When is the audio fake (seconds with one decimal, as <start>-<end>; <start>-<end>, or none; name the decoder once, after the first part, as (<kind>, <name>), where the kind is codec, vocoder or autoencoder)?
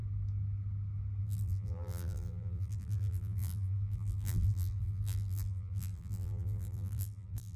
1.2-7.6 (vocoder, BigVGAN v2)